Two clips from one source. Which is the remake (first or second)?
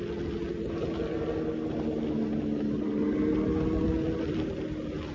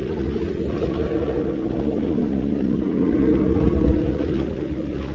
second